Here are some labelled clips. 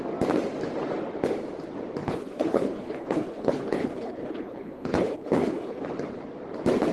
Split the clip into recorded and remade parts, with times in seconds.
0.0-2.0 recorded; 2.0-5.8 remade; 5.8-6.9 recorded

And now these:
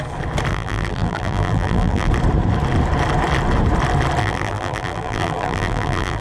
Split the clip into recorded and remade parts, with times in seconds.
0.0-0.5 recorded; 0.5-2.1 remade; 2.1-4.2 recorded; 4.2-6.2 remade

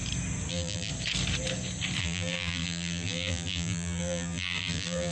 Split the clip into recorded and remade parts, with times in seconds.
0.0-0.5 recorded; 0.5-0.9 remade; 0.9-2.0 recorded; 2.0-5.1 remade

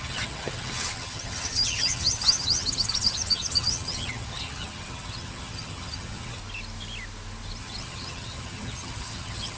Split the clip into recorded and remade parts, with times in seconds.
0.0-6.4 remade; 6.4-7.6 recorded; 7.6-9.6 remade

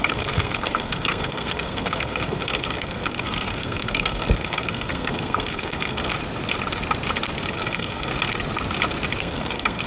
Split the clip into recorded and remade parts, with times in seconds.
0.0-6.1 remade; 6.1-7.5 recorded; 7.5-8.1 remade; 8.1-9.2 recorded; 9.2-9.9 remade

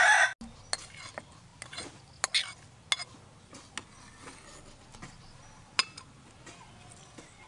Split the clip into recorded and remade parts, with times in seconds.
0.0-7.5 recorded